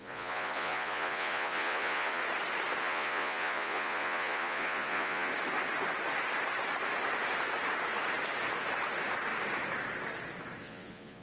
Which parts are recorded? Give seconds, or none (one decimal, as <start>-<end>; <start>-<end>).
2.2-2.8; 5.3-10.6